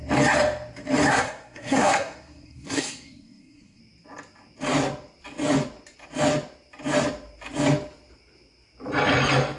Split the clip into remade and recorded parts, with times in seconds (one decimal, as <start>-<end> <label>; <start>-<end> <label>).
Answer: 0.0-1.1 recorded; 1.1-3.8 remade; 3.8-9.6 recorded